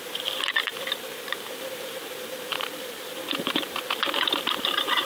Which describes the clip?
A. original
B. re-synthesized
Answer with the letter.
B